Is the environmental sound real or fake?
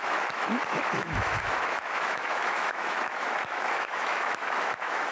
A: fake